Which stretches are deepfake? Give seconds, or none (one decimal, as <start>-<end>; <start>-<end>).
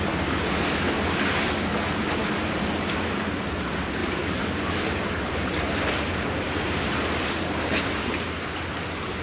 2.2-3.3; 4.0-8.1